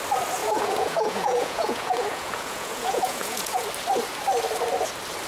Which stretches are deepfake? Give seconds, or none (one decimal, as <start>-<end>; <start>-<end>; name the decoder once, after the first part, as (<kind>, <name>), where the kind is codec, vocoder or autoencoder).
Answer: 0.4-3.6 (vocoder, Vocos)